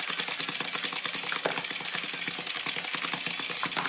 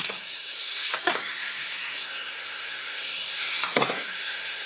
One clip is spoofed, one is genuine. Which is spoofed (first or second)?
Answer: second